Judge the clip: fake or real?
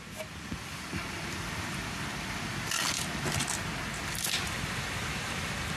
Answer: real